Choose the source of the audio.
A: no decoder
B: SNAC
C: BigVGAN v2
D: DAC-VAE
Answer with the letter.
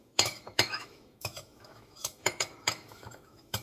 D